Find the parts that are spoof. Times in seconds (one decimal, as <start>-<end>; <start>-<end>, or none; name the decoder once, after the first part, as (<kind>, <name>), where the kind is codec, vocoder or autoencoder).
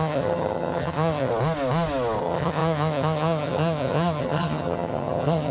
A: 0.0-1.3 (vocoder, HiFi-GAN); 2.2-5.5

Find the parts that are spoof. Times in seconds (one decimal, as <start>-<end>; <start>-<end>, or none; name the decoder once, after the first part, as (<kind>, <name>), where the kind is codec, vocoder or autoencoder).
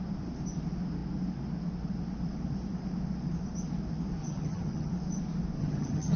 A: 4.2-4.9 (vocoder, HiFi-GAN); 5.6-6.2